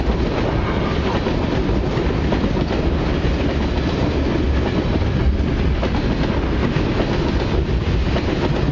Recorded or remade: recorded